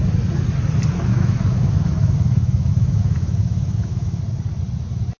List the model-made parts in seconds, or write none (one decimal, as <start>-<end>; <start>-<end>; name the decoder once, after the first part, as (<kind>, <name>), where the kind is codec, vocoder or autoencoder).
1.1-4.2 (autoencoder, DAC-VAE)